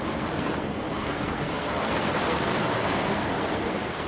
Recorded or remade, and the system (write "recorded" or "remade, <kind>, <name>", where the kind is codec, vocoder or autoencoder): remade, codec, SNAC